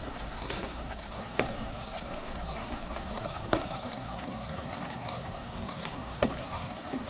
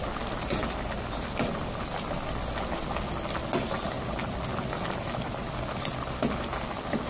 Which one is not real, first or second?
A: first